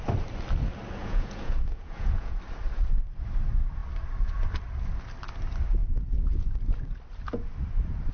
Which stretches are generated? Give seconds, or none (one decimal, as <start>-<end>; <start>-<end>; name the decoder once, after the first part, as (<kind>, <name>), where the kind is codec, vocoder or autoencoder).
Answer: 1.0-2.4 (vocoder, Vocos)